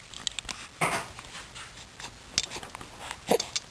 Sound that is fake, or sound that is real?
real